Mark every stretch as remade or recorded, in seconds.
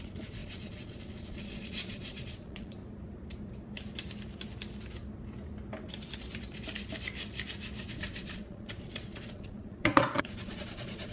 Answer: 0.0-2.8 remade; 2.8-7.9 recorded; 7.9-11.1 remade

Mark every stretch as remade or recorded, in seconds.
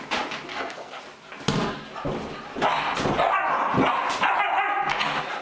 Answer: 0.0-0.5 recorded; 0.5-1.0 remade; 1.0-5.4 recorded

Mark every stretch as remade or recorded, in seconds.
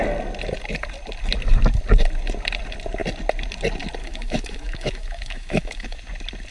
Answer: 0.0-4.0 recorded; 4.0-6.0 remade; 6.0-6.5 recorded